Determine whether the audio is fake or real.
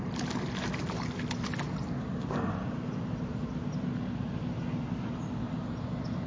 real